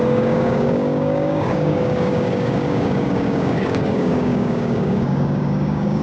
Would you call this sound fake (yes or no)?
yes